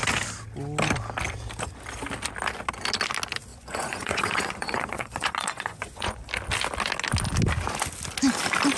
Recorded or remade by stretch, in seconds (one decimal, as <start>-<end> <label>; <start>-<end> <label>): 0.0-3.5 recorded; 3.5-6.2 remade; 6.2-8.8 recorded